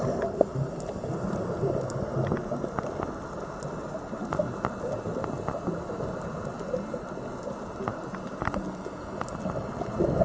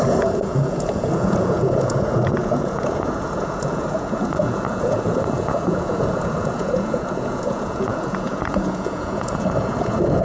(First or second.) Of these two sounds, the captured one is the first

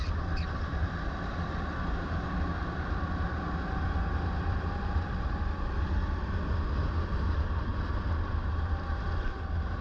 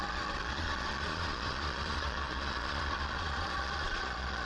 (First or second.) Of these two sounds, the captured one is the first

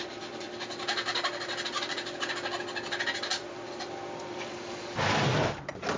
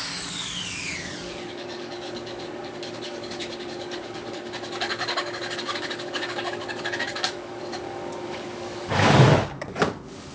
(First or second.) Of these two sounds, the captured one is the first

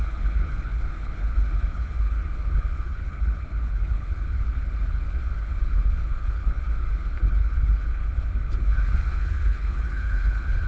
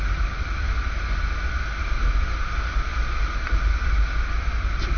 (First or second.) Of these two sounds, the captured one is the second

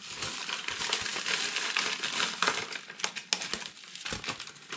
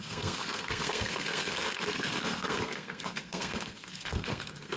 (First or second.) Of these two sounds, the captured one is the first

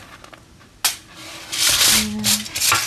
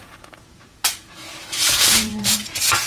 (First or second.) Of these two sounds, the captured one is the first